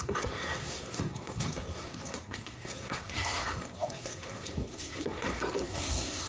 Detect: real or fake fake